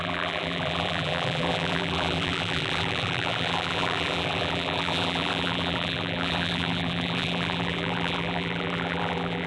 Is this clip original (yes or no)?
no